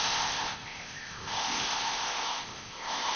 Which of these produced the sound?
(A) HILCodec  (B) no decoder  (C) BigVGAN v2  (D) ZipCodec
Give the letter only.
D